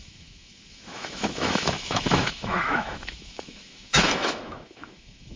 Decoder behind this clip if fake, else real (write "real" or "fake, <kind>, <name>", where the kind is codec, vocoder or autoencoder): fake, autoencoder, DAC-VAE